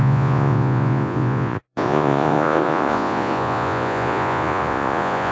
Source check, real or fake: fake